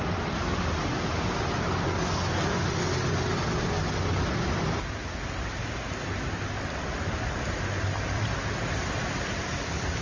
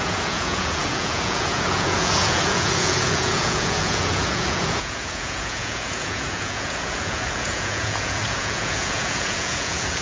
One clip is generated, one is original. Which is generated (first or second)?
second